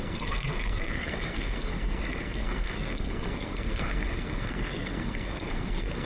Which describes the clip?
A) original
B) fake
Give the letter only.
B